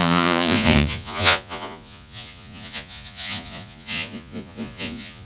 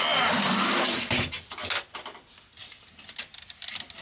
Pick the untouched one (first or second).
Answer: second